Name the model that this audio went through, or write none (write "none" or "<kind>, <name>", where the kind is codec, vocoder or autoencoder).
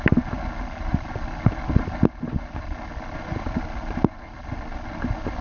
none